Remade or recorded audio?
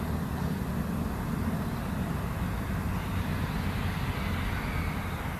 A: recorded